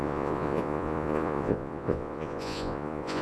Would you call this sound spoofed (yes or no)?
yes